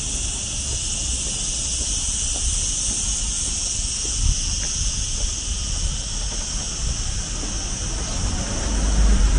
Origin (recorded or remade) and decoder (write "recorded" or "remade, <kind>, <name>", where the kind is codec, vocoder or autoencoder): recorded